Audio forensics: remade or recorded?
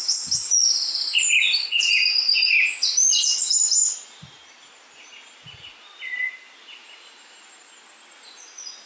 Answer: recorded